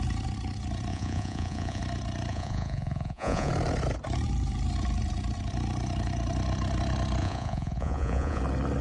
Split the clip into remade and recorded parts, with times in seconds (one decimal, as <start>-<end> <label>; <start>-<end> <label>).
0.0-0.9 recorded; 0.9-1.8 remade; 1.8-2.3 recorded; 2.3-3.5 remade; 3.5-7.2 recorded; 7.2-8.4 remade; 8.4-8.8 recorded